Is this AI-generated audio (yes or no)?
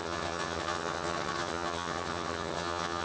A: yes